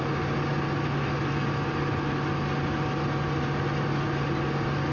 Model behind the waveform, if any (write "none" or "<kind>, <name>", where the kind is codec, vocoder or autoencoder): none